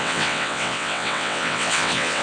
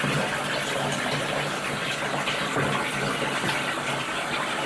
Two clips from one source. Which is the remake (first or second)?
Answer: first